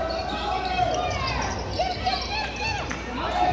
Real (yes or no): yes